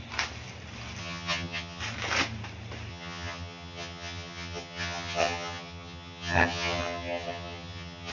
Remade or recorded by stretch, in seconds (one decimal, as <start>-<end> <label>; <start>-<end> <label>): 0.0-1.0 recorded; 1.0-1.8 remade; 1.8-2.9 recorded; 2.9-8.1 remade